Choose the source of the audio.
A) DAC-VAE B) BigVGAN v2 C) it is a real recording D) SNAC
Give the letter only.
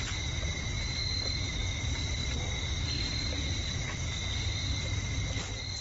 C